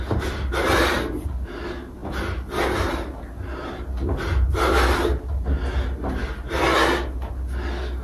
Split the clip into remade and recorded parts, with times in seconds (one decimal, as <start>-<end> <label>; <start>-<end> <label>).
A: 0.0-8.0 recorded